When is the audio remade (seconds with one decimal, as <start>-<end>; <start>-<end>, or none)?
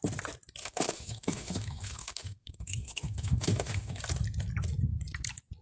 0.6-4.0